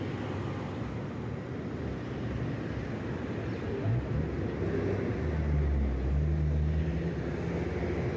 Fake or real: real